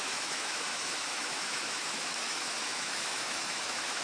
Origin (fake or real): fake